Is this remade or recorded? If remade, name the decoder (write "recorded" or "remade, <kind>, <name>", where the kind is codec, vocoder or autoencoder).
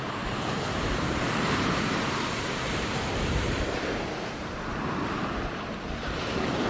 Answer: remade, vocoder, BigVGAN v2